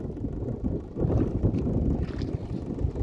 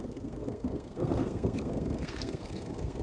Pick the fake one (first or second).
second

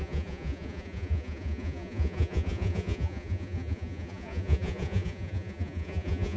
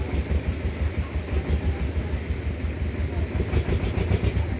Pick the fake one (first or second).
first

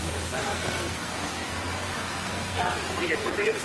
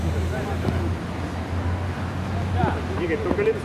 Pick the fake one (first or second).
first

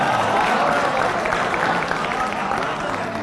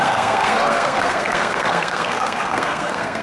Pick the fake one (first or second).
second